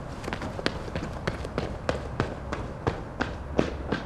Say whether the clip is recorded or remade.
recorded